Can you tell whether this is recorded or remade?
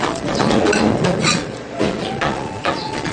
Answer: remade